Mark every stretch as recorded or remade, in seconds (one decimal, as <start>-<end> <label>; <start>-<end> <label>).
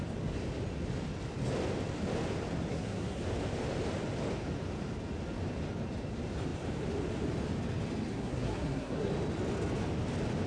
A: 0.0-2.7 recorded; 2.7-3.2 remade; 3.2-8.1 recorded; 8.1-9.1 remade; 9.1-10.5 recorded